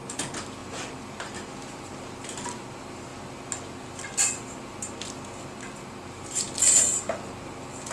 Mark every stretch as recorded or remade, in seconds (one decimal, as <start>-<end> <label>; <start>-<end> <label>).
0.0-7.9 recorded